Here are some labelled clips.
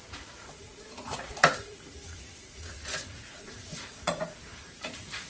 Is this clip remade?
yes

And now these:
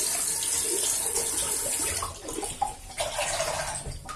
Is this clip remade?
no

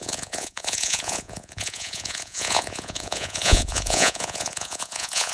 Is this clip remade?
yes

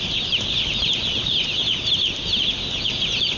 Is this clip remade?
no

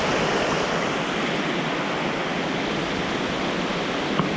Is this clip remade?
no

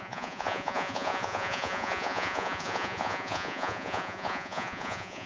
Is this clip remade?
yes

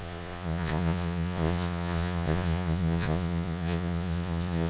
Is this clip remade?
yes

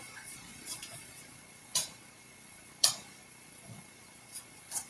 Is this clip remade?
yes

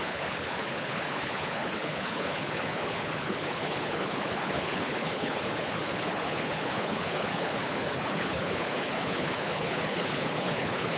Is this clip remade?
yes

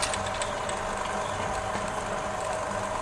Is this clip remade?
no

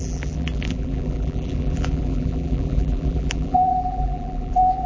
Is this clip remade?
yes